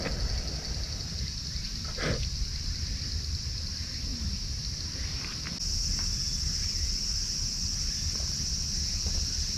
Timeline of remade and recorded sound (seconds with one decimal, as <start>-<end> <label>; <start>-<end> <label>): 0.0-9.6 recorded